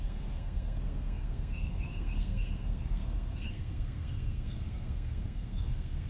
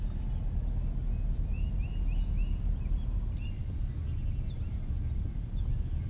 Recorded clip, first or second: second